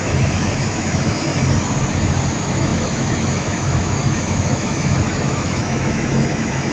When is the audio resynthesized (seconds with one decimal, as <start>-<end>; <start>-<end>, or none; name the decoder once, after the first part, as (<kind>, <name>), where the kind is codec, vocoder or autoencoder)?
0.0-1.3 (autoencoder, DAC-VAE); 2.3-6.7